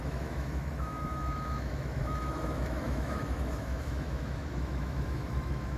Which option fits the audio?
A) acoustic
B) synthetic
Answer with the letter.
B